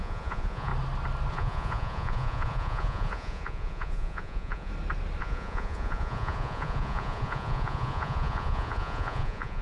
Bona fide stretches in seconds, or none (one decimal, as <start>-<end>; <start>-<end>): 0.7-1.3; 4.7-5.2